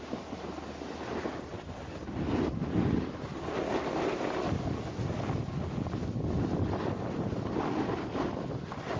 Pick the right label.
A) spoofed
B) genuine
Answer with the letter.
B